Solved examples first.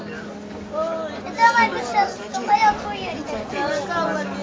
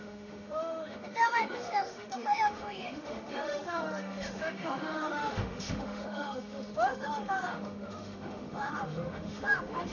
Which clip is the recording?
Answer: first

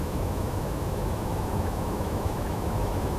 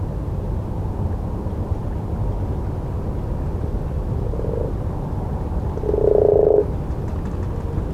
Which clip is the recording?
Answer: second